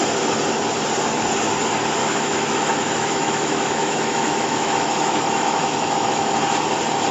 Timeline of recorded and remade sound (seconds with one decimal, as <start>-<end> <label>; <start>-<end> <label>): 0.0-2.0 recorded; 2.0-6.3 remade; 6.3-7.1 recorded